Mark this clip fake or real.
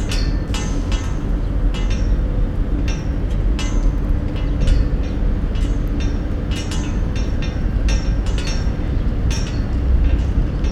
real